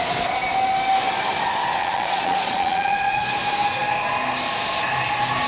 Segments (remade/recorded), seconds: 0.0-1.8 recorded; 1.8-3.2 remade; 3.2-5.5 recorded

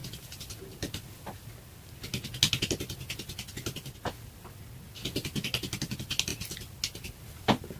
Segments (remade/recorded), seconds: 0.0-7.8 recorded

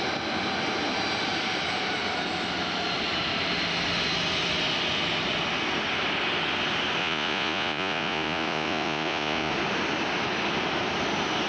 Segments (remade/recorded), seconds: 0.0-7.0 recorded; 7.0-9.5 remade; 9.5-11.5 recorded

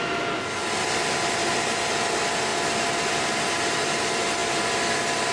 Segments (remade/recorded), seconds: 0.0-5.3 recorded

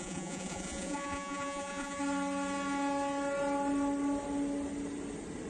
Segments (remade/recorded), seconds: 0.0-2.0 remade; 2.0-5.5 recorded

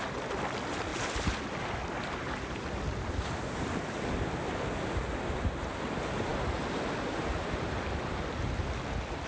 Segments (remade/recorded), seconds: 0.0-9.3 recorded

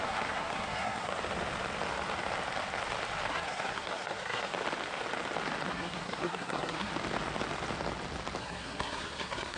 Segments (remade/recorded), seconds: 0.0-1.1 remade; 1.1-3.3 recorded; 3.3-4.5 remade; 4.5-5.7 recorded; 5.7-6.9 remade; 6.9-8.4 recorded; 8.4-9.6 remade

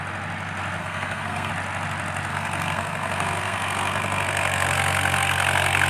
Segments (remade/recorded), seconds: 0.0-0.8 recorded; 0.8-1.5 remade; 1.5-2.3 recorded; 2.3-5.9 remade